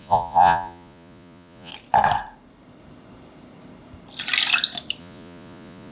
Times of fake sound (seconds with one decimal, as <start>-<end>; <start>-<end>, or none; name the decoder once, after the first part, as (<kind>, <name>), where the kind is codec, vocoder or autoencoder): 0.0-1.7 (vocoder, Vocos); 5.0-5.9